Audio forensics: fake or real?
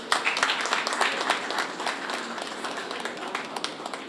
real